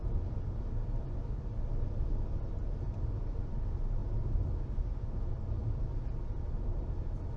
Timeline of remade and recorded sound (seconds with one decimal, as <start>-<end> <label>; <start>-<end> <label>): 0.0-7.4 recorded